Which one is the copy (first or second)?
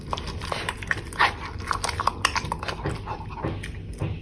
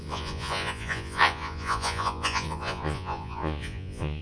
second